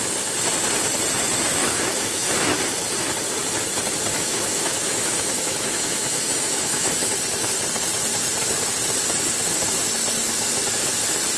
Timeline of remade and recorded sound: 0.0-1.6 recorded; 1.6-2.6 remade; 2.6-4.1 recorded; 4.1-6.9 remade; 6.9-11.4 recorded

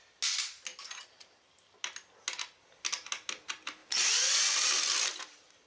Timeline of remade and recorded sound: 0.0-5.7 recorded